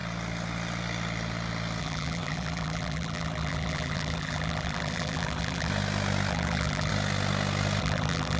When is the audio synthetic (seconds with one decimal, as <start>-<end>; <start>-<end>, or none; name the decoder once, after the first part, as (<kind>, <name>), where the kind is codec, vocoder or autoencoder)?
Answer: 1.8-5.7 (vocoder, BigVGAN v2); 6.3-6.9; 7.8-8.4